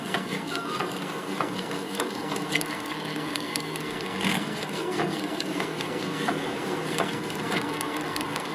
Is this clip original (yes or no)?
no